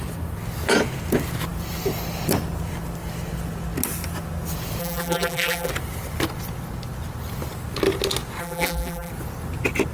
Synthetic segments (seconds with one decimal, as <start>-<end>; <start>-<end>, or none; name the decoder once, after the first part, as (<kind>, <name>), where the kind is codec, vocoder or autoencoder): 4.8-5.7 (vocoder, BigVGAN v2); 8.4-9.1